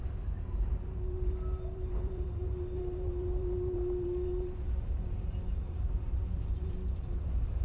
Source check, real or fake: fake